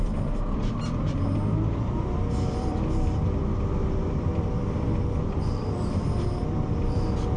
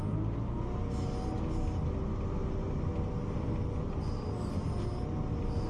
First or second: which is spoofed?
first